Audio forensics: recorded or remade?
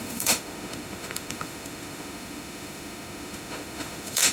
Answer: remade